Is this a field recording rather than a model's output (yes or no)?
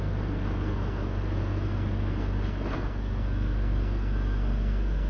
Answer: no